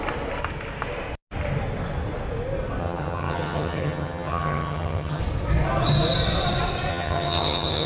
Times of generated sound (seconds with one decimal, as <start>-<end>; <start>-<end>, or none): 2.8-5.2; 6.9-7.9